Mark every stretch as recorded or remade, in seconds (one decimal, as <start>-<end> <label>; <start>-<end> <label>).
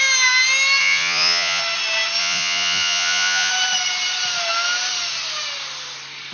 0.0-0.8 recorded; 0.8-1.6 remade; 1.6-2.2 recorded; 2.2-3.5 remade; 3.5-6.3 recorded